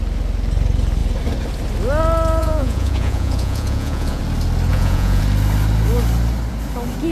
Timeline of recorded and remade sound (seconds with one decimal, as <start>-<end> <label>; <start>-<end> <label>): 0.0-2.4 recorded; 2.4-4.2 remade; 4.2-4.7 recorded; 4.7-5.2 remade; 5.2-7.1 recorded